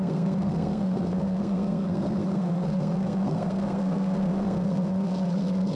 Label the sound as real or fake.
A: fake